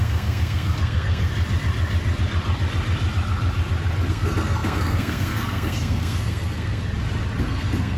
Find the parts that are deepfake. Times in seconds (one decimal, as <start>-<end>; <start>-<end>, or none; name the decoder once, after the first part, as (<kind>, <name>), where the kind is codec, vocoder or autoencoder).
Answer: 0.0-1.3 (codec, SNAC); 4.1-6.8; 7.4-8.0